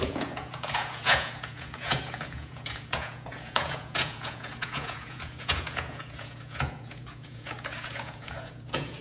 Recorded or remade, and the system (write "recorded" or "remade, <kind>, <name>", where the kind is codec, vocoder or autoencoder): remade, vocoder, Vocos